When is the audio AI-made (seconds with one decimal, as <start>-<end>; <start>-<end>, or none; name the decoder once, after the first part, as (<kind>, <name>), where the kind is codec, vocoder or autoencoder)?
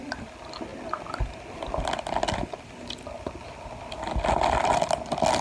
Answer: none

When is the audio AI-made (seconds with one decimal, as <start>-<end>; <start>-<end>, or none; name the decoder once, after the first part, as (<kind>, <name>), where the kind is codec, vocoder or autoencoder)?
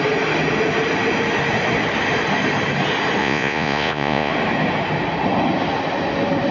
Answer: 3.2-4.3 (vocoder, Vocos)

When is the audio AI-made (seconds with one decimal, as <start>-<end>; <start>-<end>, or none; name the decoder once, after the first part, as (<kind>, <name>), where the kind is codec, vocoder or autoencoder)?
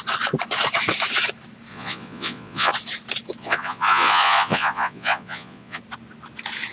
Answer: 1.7-2.7 (vocoder, Vocos); 3.4-5.8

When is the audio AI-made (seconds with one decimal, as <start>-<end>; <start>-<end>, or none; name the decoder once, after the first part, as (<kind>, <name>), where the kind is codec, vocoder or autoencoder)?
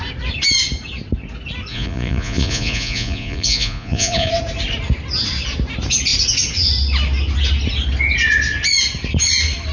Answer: 1.7-4.3 (vocoder, Vocos)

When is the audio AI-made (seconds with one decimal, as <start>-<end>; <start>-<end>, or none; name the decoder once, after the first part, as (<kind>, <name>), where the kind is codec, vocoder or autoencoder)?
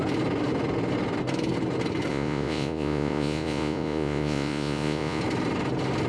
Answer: 2.1-5.2 (vocoder, Vocos)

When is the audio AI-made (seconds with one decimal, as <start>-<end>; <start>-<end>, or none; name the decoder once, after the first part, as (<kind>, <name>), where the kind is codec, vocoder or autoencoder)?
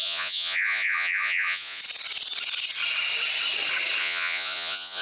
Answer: 0.0-1.8 (vocoder, Vocos); 4.0-5.0